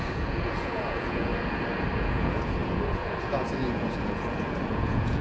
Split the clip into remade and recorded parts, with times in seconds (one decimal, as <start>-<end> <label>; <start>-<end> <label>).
0.0-1.3 remade; 1.3-2.0 recorded; 2.0-5.2 remade